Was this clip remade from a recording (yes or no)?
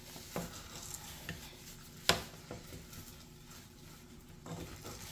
no